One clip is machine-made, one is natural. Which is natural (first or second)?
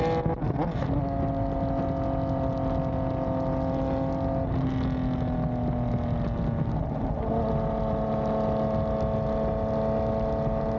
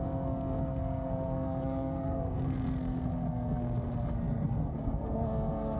first